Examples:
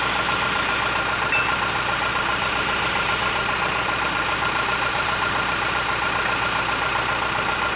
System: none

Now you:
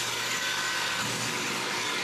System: codec, DAC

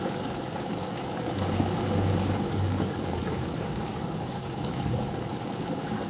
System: codec, DAC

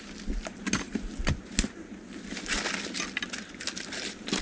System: none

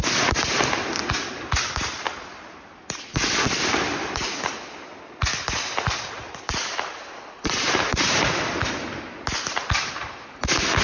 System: none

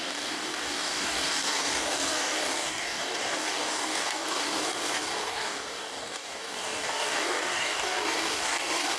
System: codec, DAC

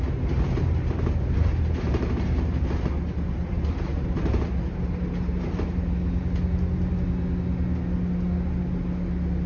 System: none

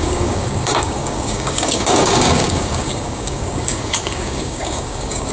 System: codec, DAC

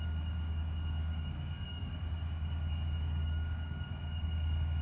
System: codec, DAC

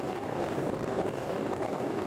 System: codec, DAC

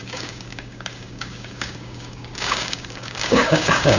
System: codec, DAC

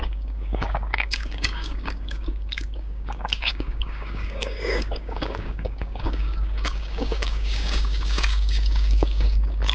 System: codec, DAC